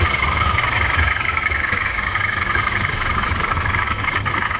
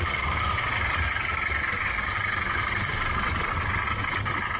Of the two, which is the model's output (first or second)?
first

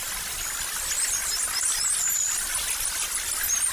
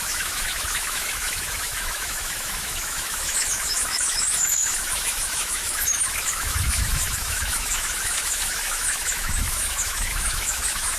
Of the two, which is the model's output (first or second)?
second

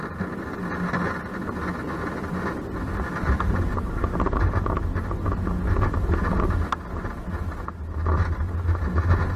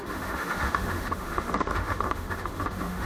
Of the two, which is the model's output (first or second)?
second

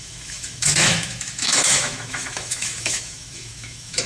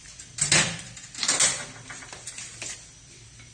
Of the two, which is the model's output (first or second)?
first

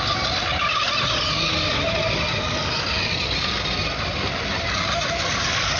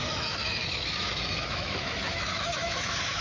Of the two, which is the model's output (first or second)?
second